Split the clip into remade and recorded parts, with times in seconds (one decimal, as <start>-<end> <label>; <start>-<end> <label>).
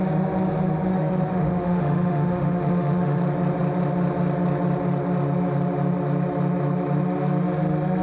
0.0-0.9 recorded; 0.9-3.2 remade; 3.2-8.0 recorded